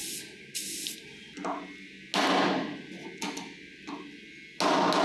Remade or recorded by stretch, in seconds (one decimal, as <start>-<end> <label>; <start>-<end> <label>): 0.0-5.0 recorded